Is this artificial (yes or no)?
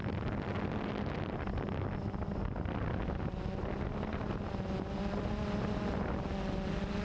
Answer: no